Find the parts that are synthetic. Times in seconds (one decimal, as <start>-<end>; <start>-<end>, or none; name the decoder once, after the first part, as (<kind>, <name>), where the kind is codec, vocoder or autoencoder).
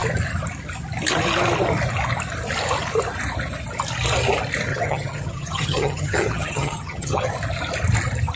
4.7-7.3 (vocoder, HiFi-GAN)